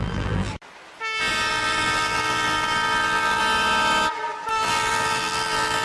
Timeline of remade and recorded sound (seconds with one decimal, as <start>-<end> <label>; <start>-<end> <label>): 0.0-0.5 remade; 0.5-1.5 recorded; 1.5-3.4 remade; 3.4-4.5 recorded; 4.5-5.8 remade